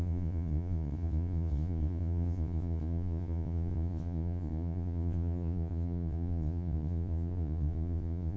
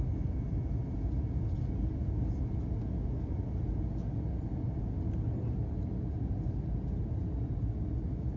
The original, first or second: second